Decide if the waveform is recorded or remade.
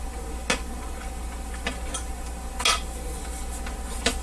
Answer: recorded